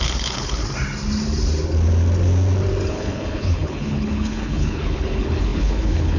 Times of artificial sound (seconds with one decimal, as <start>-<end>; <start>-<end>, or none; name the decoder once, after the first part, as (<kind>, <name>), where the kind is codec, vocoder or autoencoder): 0.0-0.6 (codec, HILCodec); 2.9-6.2